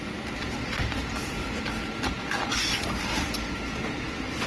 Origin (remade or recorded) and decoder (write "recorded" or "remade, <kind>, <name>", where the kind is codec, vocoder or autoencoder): recorded